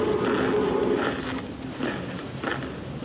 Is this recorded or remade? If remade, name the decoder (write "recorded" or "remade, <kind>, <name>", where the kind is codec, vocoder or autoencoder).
recorded